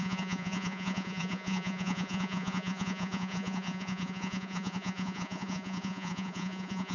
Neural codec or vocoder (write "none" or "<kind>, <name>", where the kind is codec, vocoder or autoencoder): vocoder, Vocos